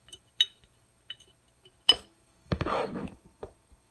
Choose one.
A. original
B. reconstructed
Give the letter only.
B